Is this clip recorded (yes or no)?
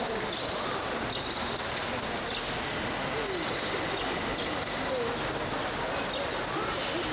yes